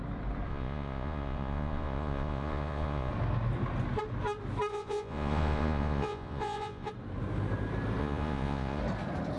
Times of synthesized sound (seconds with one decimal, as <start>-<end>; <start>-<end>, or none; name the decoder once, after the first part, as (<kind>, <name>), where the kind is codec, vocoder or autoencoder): 0.5-3.1 (vocoder, Vocos); 4.7-6.9; 8.0-8.8